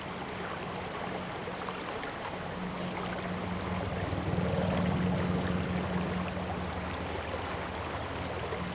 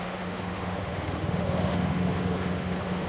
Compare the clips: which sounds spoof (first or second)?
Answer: second